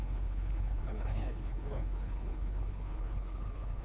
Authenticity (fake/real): fake